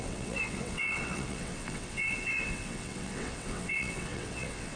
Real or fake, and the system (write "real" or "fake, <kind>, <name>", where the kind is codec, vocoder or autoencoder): fake, vocoder, WaveNeXt